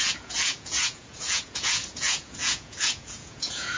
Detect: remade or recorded remade